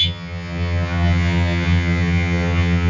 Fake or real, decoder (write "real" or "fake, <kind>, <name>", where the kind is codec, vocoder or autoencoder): fake, vocoder, HiFi-GAN